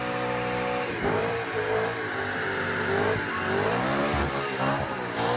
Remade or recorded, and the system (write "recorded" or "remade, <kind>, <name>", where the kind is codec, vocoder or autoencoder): remade, vocoder, BigVGAN v2